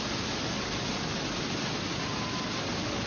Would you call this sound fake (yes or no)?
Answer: no